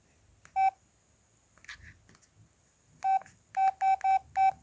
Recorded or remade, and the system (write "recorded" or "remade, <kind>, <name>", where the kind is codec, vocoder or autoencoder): recorded